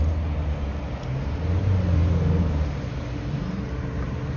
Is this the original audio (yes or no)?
yes